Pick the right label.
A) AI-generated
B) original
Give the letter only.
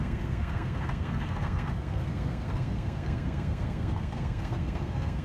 A